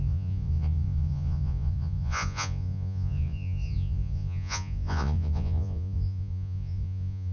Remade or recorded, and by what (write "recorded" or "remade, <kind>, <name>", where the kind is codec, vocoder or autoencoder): remade, vocoder, Vocos